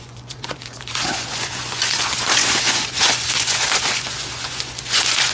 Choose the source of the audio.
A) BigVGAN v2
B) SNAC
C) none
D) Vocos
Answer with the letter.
D